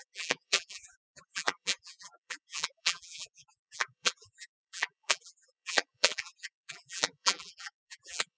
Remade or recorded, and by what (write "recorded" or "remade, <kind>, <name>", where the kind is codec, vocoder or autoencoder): remade, vocoder, BigVGAN v2